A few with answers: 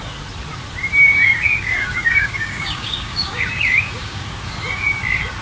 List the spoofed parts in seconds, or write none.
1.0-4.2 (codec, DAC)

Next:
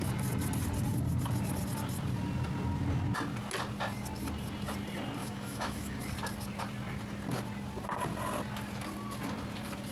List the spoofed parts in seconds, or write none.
5.2-6.0 (autoencoder, DAC-VAE)

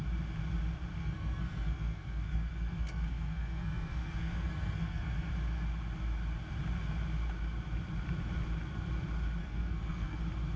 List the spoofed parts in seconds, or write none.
1.0-5.3 (codec, SNAC); 9.4-10.2

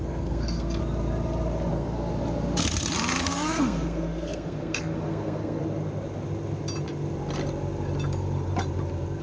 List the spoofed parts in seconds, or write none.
0.0-0.8 (codec, SNAC); 1.7-2.1; 3.2-5.6

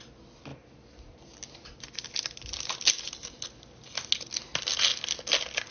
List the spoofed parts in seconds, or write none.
none